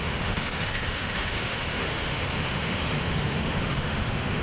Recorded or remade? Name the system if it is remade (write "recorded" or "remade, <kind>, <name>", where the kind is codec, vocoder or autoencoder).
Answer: remade, autoencoder, DAC-VAE